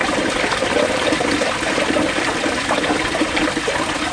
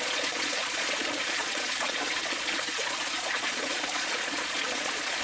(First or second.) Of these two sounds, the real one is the first